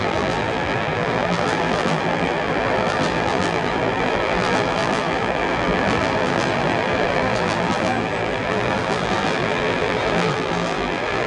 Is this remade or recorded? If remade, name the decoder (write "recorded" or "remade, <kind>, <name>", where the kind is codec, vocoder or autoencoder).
remade, vocoder, BigVGAN v2